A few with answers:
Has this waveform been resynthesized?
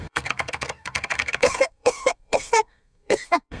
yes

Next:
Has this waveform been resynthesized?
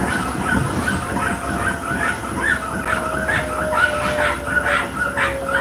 no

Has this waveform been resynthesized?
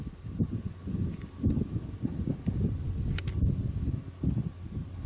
no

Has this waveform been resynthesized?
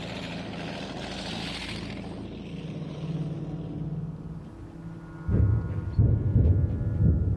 no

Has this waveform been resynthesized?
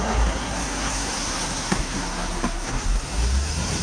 yes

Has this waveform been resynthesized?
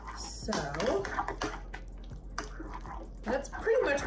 no